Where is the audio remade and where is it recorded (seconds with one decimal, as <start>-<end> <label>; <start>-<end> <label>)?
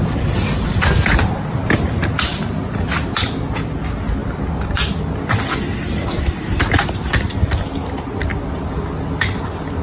0.0-1.2 remade; 1.2-2.3 recorded; 2.3-3.2 remade; 3.2-9.8 recorded